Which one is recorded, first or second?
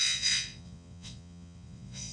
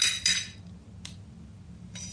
second